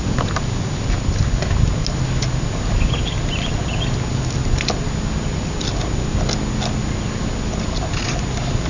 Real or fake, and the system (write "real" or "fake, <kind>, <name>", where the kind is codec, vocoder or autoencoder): real